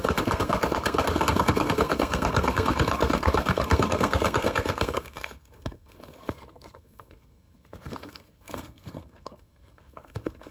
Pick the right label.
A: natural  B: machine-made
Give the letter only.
B